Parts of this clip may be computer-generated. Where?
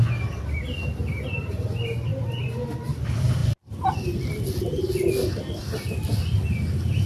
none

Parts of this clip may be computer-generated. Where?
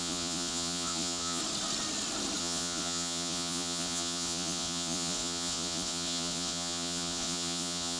0.0-1.4; 2.4-8.0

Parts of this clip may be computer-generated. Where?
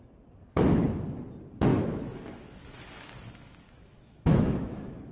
1.7-5.1